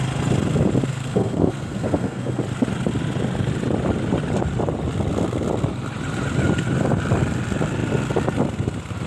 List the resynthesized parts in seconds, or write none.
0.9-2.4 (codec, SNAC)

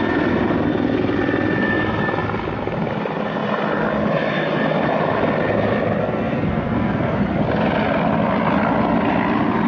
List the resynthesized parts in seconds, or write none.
6.0-7.2 (codec, SNAC)